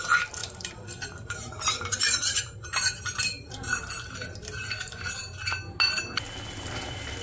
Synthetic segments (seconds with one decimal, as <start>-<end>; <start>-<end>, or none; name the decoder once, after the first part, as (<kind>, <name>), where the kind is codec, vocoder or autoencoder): 0.4-3.8 (vocoder, BigVGAN v2)